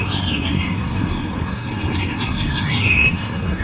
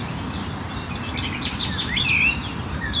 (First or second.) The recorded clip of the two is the second